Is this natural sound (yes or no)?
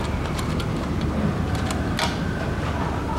yes